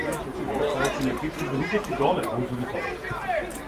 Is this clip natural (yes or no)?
no